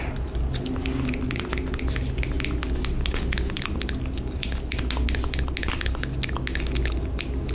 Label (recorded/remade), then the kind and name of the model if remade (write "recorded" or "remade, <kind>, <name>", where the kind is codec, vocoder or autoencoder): recorded